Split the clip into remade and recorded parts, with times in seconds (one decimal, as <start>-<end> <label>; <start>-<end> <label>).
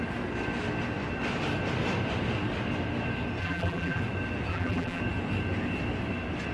0.0-3.4 recorded; 3.4-4.0 remade; 4.0-4.5 recorded; 4.5-5.0 remade; 5.0-6.5 recorded